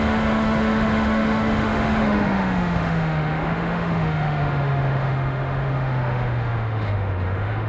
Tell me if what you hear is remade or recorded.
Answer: remade